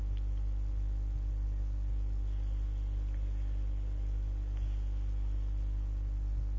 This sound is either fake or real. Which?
real